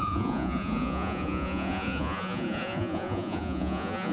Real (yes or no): no